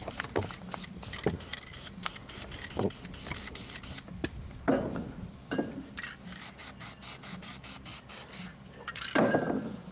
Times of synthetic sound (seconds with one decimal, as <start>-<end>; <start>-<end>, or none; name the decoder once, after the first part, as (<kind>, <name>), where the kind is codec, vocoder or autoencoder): none